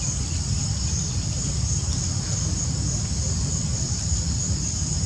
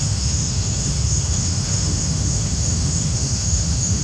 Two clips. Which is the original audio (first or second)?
first